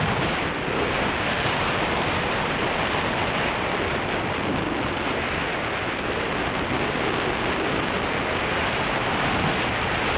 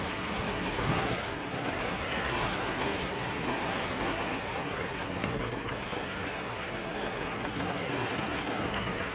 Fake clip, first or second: second